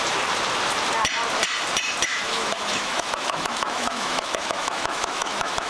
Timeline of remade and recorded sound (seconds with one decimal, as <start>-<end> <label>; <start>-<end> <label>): 0.0-2.1 recorded; 2.1-5.7 remade